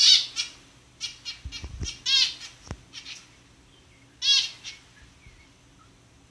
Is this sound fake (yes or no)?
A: no